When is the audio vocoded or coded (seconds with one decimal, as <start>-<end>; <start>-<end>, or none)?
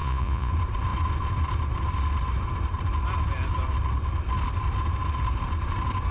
0.0-0.5